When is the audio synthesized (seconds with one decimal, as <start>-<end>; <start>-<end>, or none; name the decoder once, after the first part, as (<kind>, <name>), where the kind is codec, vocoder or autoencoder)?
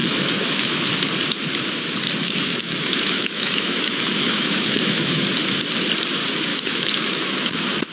0.0-0.9 (autoencoder, DAC-VAE); 2.2-5.2; 6.5-7.5